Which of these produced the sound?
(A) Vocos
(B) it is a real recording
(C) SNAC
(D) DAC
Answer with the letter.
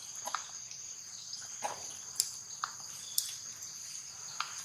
B